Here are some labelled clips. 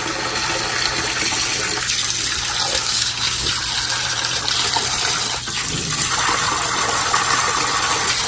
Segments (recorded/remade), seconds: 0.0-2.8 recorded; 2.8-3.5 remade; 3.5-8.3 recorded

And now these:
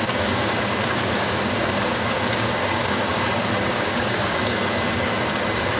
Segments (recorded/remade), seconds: 0.0-5.1 remade; 5.1-5.8 recorded

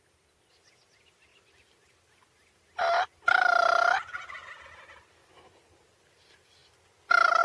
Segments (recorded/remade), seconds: 0.0-7.4 recorded

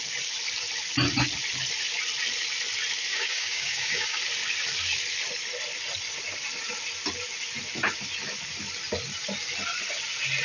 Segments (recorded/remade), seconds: 0.0-3.1 recorded; 3.1-4.2 remade; 4.2-10.4 recorded

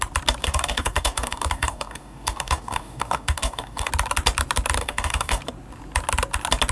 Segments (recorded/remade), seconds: 0.0-0.4 recorded; 0.4-3.9 remade; 3.9-4.8 recorded; 4.8-5.4 remade; 5.4-6.7 recorded

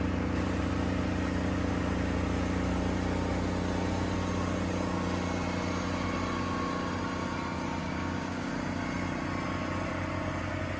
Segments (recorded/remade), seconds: 0.0-7.8 recorded; 7.8-8.5 remade; 8.5-10.8 recorded

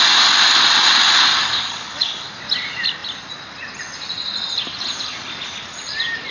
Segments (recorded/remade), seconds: 0.0-1.4 recorded; 1.4-2.3 remade; 2.3-6.3 recorded

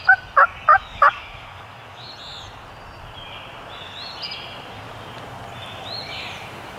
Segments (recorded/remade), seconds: 0.0-0.7 recorded; 0.7-2.1 remade; 2.1-6.8 recorded